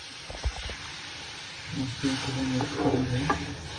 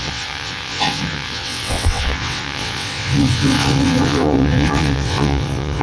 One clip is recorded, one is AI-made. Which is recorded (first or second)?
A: first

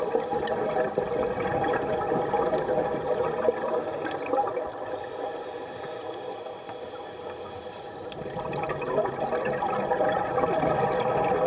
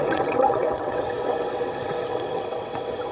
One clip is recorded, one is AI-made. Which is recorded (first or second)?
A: first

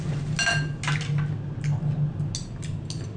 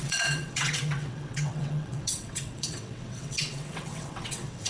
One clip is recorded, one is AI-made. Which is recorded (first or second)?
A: first